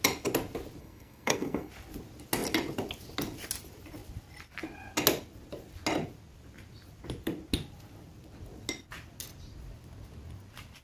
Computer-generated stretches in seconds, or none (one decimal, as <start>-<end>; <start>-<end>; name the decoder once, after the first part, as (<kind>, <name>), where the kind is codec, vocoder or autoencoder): 0.8-1.7 (codec, SNAC)